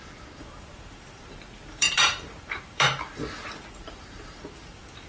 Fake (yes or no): yes